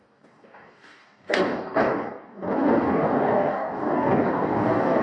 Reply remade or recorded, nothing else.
remade